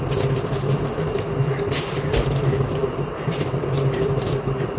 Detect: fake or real real